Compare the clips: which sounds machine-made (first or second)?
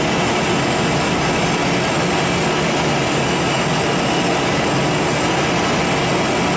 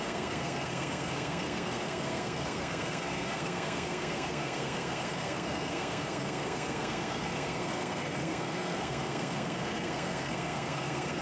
second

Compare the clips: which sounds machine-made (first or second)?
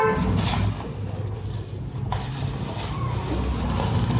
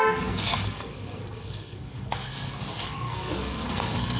second